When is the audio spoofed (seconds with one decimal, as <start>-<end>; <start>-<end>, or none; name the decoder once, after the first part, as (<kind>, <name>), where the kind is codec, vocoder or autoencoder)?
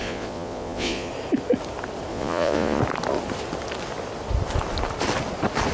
0.0-1.1 (vocoder, Vocos); 2.1-2.8